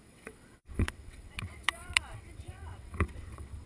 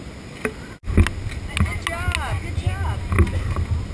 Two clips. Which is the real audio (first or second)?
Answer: second